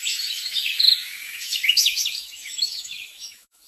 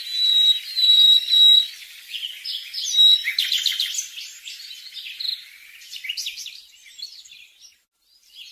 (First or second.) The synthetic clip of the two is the first